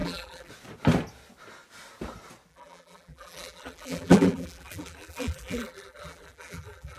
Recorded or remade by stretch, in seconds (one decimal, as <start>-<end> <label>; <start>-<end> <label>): 0.0-0.5 remade; 0.5-2.5 recorded; 2.5-7.0 remade